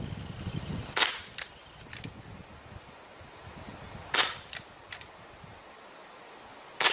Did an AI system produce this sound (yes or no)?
no